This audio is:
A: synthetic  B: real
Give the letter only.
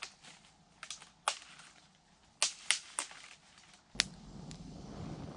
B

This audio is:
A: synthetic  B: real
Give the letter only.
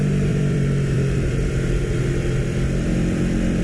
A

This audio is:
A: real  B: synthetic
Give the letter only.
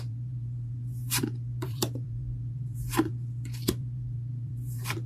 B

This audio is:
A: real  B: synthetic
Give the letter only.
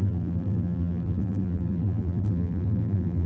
B